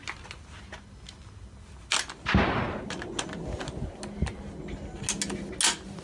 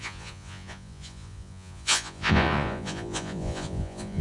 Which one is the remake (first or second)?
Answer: second